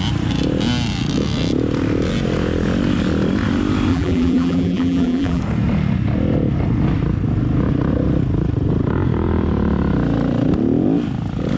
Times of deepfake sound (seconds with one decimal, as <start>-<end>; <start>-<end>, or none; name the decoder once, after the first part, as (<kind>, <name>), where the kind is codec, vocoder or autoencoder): 3.9-5.4 (vocoder, BigVGAN v2)